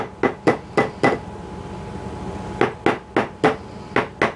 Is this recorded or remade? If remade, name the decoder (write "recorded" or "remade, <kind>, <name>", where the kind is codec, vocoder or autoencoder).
recorded